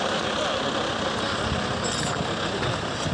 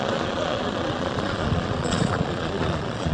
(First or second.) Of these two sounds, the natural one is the first